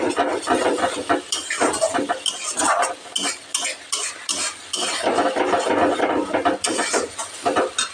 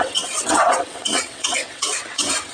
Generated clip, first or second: second